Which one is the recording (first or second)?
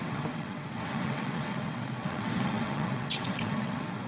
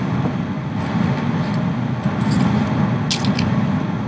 second